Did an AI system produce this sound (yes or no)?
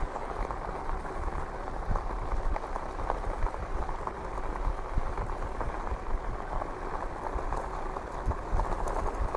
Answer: no